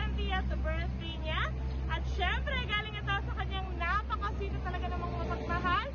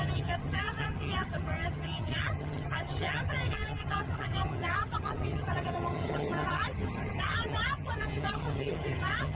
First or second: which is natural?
first